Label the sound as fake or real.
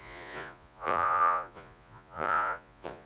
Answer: fake